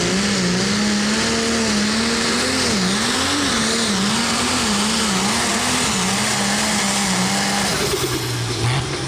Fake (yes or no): no